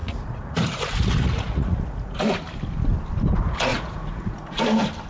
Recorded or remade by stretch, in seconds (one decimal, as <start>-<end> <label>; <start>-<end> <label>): 0.0-2.2 remade; 2.2-3.7 recorded; 3.7-4.6 remade; 4.6-5.1 recorded